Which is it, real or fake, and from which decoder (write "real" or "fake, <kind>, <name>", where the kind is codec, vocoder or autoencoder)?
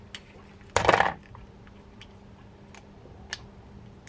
real